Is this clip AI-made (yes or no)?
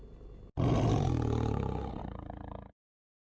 no